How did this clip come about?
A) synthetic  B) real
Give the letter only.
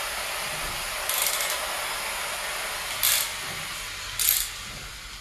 B